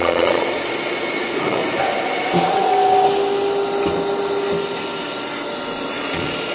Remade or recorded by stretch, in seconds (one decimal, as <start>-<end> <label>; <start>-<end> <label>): 0.0-1.6 remade; 1.6-2.3 recorded; 2.3-2.7 remade; 2.7-5.9 recorded; 5.9-6.5 remade